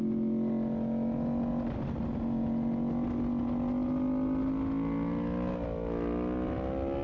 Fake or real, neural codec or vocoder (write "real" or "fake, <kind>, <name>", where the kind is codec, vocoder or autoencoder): real